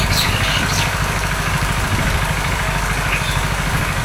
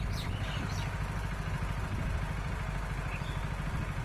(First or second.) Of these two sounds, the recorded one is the second